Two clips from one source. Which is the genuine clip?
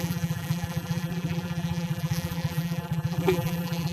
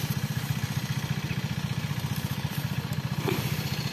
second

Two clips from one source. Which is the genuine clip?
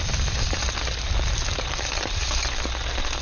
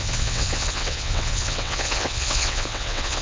first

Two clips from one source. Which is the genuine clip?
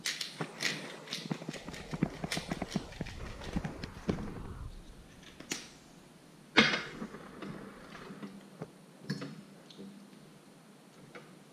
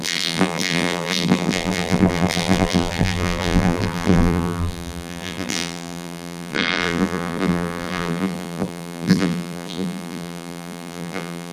first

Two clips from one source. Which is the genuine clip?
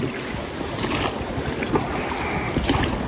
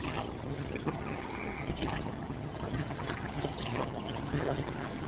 first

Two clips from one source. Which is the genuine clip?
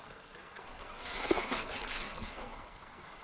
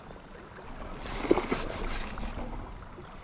second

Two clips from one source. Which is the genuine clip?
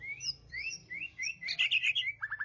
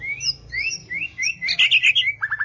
second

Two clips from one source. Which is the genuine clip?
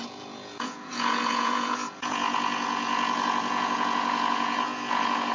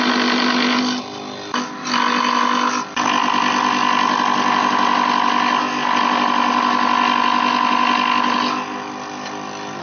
second